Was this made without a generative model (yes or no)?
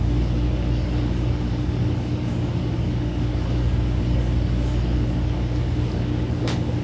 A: no